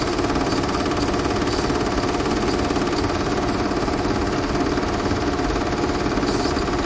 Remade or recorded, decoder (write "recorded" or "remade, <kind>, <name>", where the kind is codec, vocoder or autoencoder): recorded